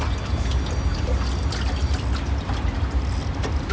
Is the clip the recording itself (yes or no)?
yes